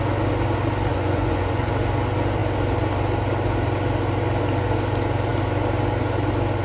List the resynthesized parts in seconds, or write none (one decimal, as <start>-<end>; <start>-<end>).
0.9-1.7